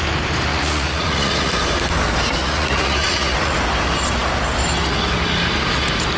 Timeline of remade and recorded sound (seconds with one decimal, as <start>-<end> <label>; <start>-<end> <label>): 0.0-0.5 recorded; 0.5-1.5 remade; 1.5-2.4 recorded; 2.4-3.5 remade; 3.5-6.2 recorded